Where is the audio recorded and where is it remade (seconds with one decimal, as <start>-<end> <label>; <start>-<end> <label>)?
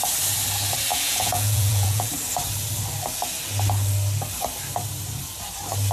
0.0-0.9 recorded; 0.9-2.1 remade; 2.1-5.9 recorded